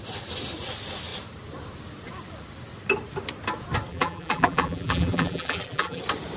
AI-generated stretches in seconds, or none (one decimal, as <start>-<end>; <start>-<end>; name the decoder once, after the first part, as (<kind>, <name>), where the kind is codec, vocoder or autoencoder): 3.9-6.0 (vocoder, BigVGAN v2)